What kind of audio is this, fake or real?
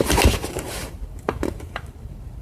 fake